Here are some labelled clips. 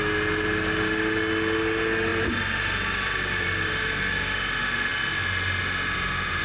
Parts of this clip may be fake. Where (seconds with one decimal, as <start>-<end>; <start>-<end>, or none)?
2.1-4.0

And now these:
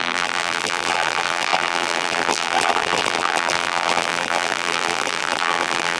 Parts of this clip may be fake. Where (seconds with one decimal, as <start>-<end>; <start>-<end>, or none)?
0.0-6.0

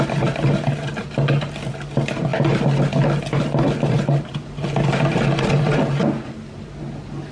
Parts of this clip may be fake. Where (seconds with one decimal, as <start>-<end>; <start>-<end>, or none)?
none

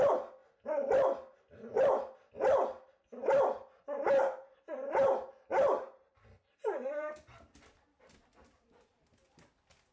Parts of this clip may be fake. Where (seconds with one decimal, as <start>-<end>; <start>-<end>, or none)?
0.0-0.4; 2.3-3.2; 6.2-9.9

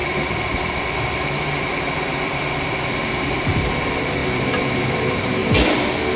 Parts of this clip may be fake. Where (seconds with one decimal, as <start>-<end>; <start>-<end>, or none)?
0.0-3.7; 4.2-4.8

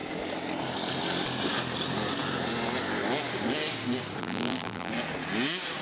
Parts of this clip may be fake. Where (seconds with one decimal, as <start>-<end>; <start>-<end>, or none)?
4.2-4.9

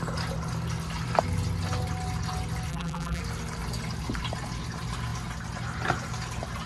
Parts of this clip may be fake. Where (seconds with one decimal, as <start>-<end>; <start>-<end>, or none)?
2.7-3.2

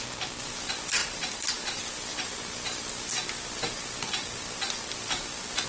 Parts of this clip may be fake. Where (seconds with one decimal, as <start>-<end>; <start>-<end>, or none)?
1.0-1.5; 4.2-4.8